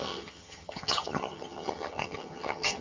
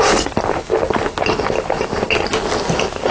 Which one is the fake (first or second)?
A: first